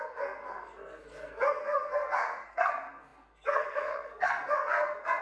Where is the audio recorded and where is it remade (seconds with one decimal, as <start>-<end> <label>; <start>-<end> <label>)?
0.0-5.2 remade